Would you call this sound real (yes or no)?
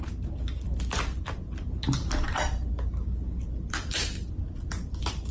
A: yes